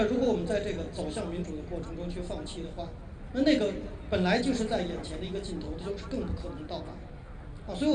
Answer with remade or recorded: recorded